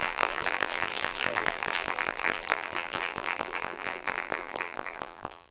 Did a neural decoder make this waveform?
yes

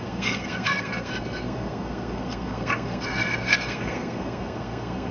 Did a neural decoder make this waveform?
yes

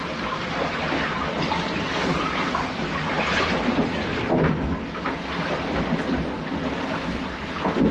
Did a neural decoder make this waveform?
no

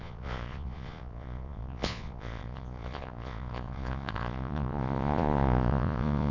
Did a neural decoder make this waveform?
yes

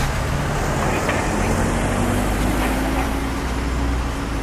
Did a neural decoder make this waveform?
no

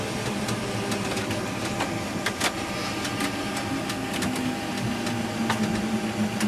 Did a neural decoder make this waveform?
no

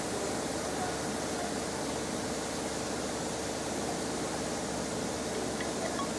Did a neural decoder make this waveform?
no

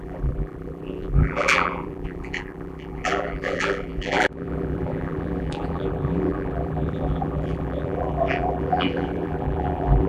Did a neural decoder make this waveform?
yes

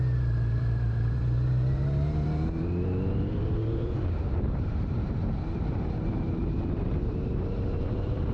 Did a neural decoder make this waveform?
yes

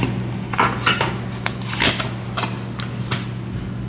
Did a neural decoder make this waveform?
no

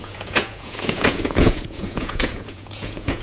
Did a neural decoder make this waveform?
yes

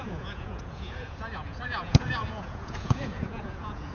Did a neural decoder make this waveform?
yes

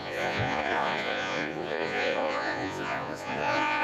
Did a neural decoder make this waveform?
yes